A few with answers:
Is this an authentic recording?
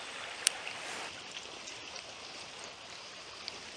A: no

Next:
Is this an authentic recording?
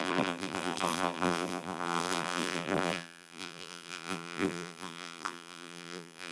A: no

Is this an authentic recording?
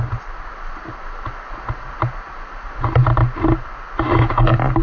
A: yes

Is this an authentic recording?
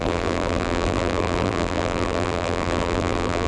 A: no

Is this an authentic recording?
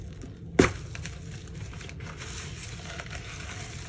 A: yes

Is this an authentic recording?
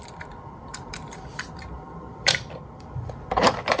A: no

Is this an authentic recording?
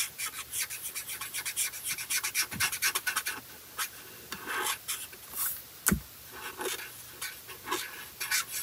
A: yes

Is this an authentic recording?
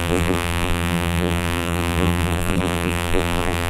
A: no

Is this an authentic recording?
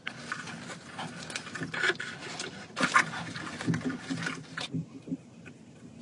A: yes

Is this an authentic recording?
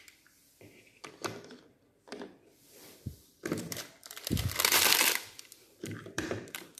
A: no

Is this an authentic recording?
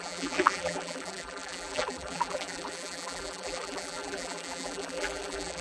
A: no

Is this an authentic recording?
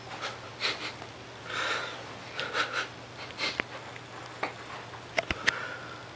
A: yes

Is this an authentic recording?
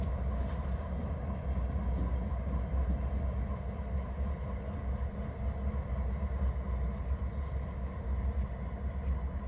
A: yes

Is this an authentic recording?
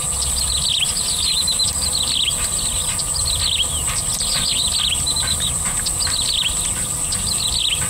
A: yes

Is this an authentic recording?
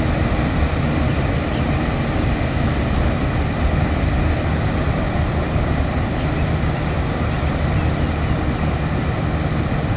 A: yes